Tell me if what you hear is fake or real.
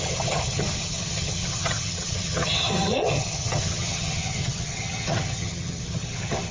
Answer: fake